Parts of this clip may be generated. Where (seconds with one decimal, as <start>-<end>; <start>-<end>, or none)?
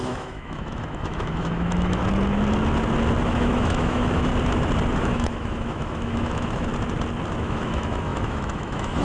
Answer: 0.0-2.0; 3.2-4.3; 5.0-6.7; 7.4-9.0